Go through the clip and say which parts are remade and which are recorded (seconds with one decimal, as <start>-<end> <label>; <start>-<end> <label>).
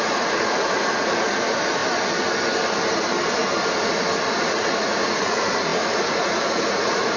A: 0.0-1.8 remade; 1.8-4.4 recorded; 4.4-7.2 remade